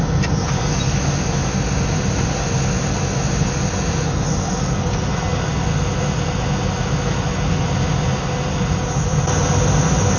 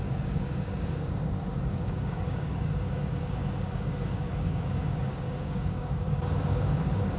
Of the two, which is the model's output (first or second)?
second